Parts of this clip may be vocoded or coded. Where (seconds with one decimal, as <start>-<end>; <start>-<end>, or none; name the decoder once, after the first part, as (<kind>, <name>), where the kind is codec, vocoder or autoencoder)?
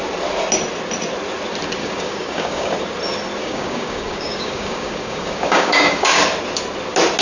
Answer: 1.8-2.7 (codec, DAC); 3.4-6.2